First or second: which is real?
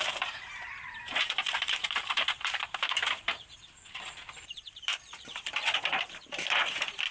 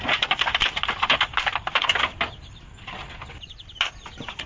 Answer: second